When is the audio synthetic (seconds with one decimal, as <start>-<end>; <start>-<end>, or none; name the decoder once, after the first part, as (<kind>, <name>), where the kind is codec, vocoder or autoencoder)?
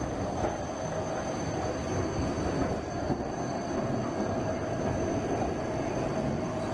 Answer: none